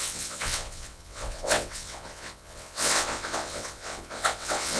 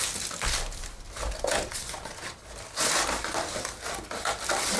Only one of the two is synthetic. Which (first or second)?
first